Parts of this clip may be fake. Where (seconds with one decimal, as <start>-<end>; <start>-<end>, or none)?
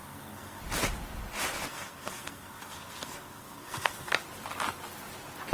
0.0-0.6; 1.7-4.1